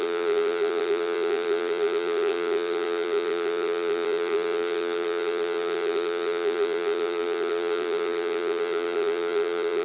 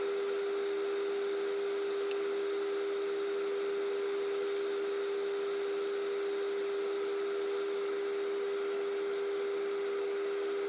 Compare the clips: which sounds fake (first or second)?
first